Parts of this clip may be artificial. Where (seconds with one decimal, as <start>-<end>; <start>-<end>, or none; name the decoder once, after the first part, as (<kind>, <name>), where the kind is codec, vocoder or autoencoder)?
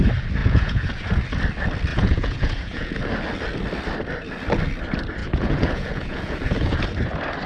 0.4-1.1 (vocoder, Vocos); 1.9-3.0; 5.2-6.8